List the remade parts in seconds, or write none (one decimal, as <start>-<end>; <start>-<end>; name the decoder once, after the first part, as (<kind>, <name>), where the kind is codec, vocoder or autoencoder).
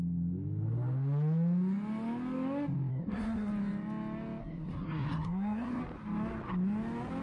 2.9-3.5 (codec, SNAC); 4.4-5.8